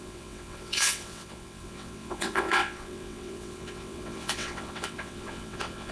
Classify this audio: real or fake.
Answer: fake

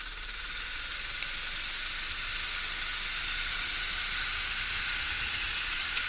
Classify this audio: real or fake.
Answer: real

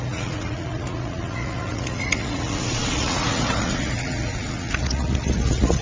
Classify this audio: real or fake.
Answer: fake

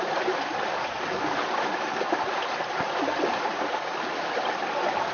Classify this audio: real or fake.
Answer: real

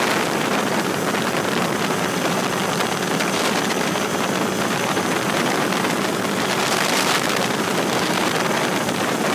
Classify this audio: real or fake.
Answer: fake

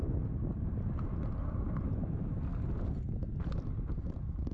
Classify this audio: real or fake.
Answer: real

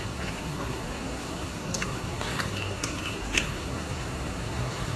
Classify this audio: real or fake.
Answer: fake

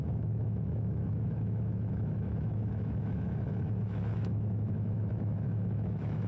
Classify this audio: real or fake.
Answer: fake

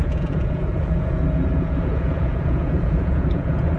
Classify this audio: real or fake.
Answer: fake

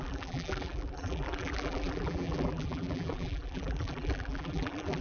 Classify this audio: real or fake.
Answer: fake